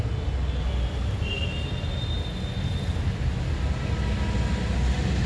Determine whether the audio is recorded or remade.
recorded